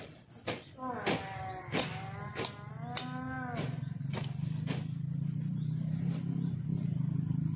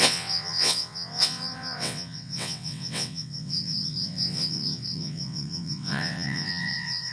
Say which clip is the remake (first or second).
second